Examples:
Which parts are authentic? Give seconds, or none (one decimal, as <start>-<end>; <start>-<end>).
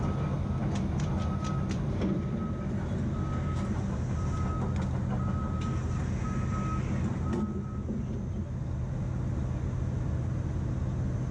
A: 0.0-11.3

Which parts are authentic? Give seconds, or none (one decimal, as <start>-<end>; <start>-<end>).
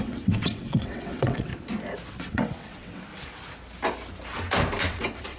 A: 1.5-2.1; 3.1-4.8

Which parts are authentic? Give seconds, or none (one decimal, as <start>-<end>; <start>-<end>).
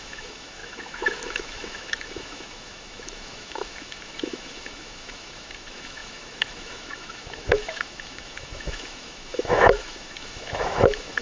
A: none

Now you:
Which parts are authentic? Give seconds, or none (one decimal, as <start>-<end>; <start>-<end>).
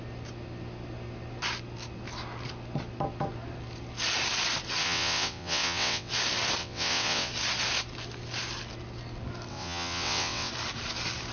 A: 0.0-4.8; 6.1-6.6; 7.3-9.5; 10.5-11.3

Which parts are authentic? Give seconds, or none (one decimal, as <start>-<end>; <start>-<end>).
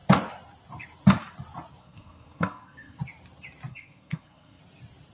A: 0.0-1.8; 3.0-3.7; 4.6-5.1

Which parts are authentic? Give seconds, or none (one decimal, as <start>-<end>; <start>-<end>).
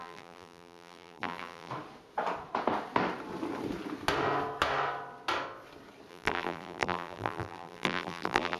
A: 1.7-6.1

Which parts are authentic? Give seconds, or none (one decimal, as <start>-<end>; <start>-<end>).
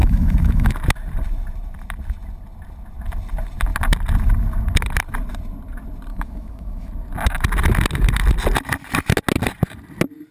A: 0.7-6.1; 6.9-10.3